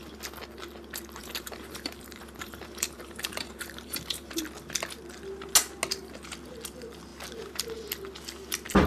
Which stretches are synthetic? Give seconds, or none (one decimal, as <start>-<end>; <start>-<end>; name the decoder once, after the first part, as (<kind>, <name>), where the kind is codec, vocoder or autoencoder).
1.2-4.4 (vocoder, BigVGAN v2)